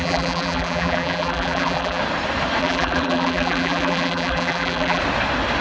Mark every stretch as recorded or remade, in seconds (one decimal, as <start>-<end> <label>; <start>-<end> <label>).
0.0-2.0 remade; 2.0-2.6 recorded; 2.6-5.0 remade; 5.0-5.6 recorded